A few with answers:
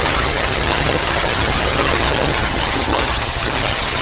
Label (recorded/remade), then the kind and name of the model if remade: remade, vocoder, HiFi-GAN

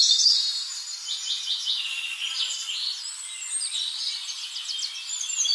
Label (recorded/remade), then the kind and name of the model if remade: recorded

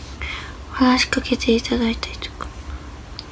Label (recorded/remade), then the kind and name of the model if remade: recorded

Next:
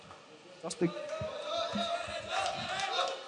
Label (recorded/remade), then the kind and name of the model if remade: recorded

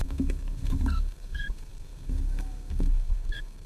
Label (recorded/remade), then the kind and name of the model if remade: remade, codec, SNAC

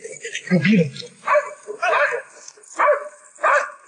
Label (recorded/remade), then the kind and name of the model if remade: recorded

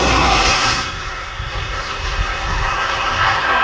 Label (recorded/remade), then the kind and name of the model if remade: remade, codec, SNAC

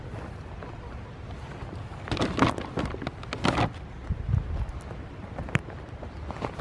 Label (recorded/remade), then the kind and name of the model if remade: recorded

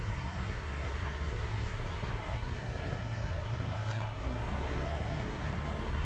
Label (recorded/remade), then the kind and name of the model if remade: remade, codec, SNAC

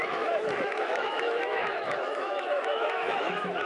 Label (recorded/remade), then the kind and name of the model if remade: remade, autoencoder, DAC-VAE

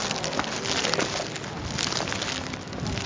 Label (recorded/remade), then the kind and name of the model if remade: recorded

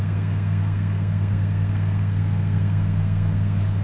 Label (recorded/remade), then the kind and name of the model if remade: remade, codec, SNAC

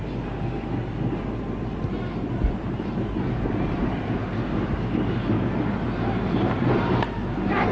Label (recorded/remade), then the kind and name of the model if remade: recorded